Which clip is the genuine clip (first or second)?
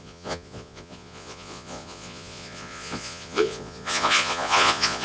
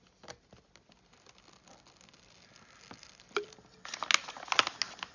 second